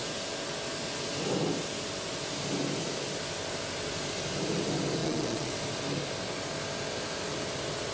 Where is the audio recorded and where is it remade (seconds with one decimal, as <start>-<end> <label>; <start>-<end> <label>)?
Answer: 0.0-5.0 recorded; 5.0-5.5 remade; 5.5-7.9 recorded